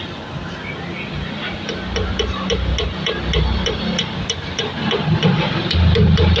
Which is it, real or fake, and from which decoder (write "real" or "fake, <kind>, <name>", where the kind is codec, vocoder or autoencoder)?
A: real